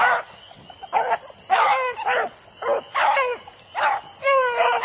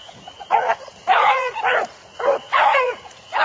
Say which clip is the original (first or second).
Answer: first